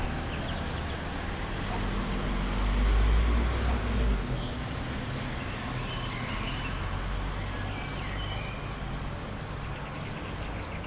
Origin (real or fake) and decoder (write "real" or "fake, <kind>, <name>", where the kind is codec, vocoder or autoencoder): real